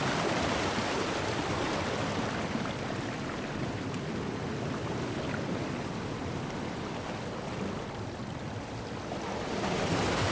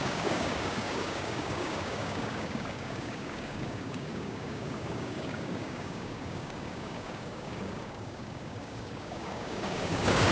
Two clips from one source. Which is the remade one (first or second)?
second